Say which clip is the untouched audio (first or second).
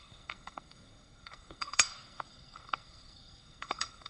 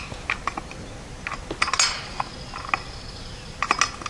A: second